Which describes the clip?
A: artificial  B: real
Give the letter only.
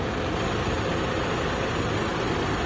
B